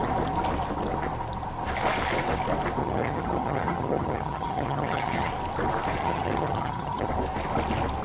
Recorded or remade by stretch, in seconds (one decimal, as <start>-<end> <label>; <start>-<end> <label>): 0.0-2.8 recorded; 2.8-5.3 remade; 5.3-6.0 recorded; 6.0-7.1 remade; 7.1-8.0 recorded